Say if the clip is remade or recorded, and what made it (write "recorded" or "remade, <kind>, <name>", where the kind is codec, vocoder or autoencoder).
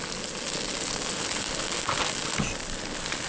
recorded